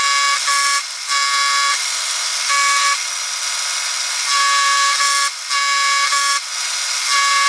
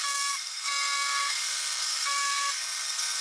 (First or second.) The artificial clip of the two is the second